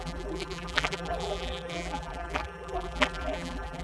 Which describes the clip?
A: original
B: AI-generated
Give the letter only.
B